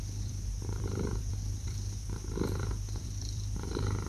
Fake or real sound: fake